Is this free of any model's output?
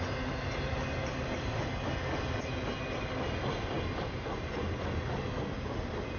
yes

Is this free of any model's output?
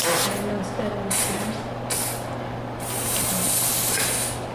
yes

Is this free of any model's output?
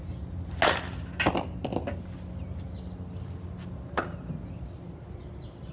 yes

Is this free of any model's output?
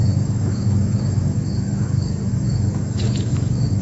no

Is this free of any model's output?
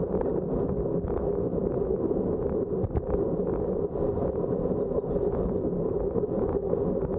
yes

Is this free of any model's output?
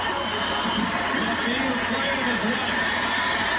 yes